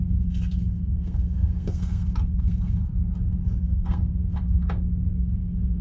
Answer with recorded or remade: remade